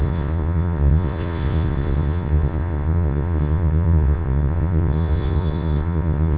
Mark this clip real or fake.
fake